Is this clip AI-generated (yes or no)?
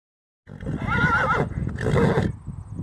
no